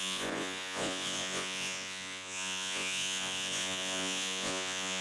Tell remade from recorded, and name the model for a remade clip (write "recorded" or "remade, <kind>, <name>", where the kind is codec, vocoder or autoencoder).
remade, vocoder, Vocos